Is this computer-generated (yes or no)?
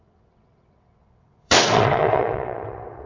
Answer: yes